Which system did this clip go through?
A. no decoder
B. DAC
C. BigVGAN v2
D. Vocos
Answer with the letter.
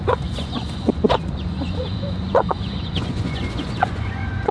D